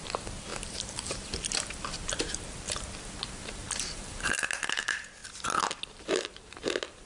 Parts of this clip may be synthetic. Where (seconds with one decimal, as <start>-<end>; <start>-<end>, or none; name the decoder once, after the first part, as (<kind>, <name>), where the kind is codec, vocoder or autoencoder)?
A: 0.0-5.2 (vocoder, BigVGAN v2); 5.9-7.1